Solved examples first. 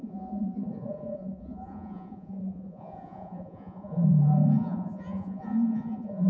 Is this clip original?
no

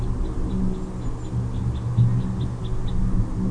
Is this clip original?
yes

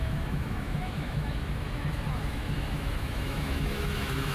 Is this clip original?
no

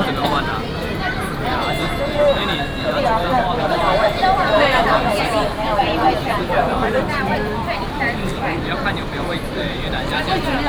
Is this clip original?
no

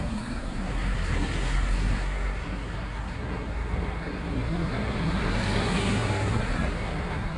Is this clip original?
no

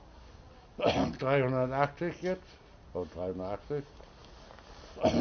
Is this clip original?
yes